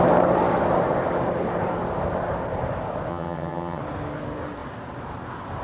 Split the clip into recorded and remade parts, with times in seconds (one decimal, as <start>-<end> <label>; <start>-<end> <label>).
0.0-3.1 recorded; 3.1-3.8 remade; 3.8-5.6 recorded